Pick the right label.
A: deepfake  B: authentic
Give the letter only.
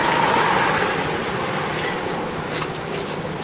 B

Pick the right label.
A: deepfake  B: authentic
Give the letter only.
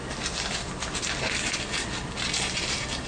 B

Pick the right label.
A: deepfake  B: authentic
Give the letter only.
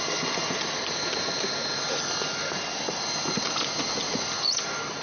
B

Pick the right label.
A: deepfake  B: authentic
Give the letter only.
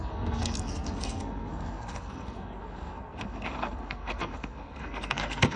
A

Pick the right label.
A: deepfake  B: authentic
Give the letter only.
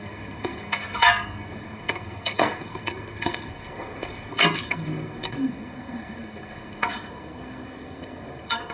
A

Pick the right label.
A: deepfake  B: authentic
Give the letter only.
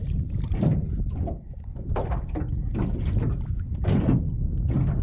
B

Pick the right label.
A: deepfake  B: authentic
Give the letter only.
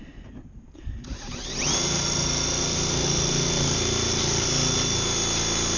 B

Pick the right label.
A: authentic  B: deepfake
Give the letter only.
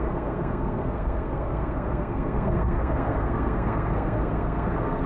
B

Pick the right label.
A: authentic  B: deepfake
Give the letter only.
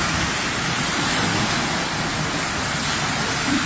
A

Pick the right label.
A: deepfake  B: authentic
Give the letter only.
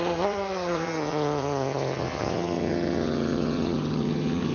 A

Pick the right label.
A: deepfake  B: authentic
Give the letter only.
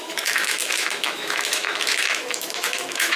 A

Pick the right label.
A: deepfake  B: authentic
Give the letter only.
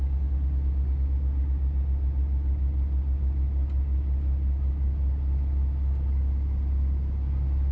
B